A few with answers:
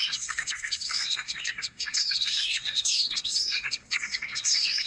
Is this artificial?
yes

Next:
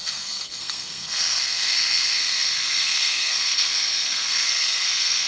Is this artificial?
yes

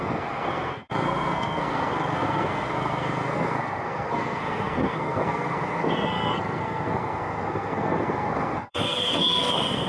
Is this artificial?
yes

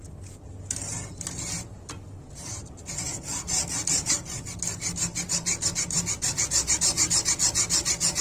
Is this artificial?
no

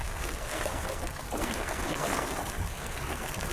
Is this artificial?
yes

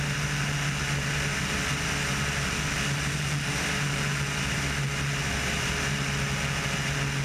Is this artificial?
no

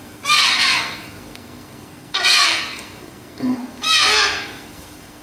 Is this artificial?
yes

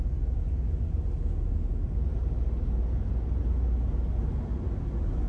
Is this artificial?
no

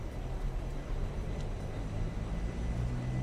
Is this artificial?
no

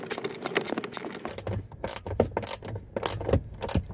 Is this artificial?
no